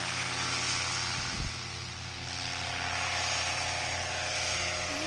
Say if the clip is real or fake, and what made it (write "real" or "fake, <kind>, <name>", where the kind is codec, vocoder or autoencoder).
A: real